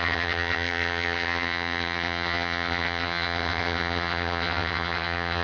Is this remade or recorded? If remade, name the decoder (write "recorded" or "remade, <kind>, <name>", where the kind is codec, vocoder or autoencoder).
remade, vocoder, HiFi-GAN